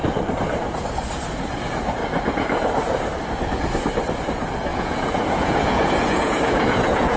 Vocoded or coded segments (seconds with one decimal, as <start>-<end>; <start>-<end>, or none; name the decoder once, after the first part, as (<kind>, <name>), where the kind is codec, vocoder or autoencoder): 4.7-7.2 (vocoder, Vocos)